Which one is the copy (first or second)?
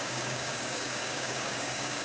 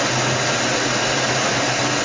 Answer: first